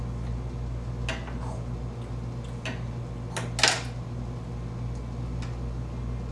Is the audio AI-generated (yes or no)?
no